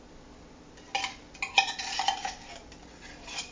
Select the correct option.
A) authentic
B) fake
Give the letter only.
A